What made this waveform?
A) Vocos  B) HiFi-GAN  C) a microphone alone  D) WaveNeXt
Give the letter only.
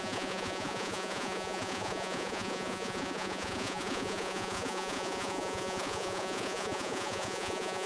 A